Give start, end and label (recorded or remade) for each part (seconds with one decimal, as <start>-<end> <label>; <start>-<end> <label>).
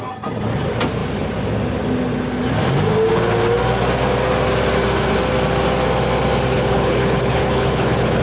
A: 0.0-6.5 recorded; 6.5-8.2 remade